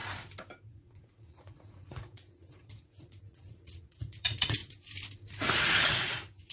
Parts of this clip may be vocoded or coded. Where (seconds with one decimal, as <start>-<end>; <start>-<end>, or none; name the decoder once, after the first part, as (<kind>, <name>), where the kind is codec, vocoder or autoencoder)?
0.6-4.6 (vocoder, Vocos); 5.5-6.5